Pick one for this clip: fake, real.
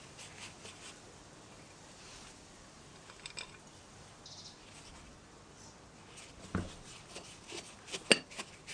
real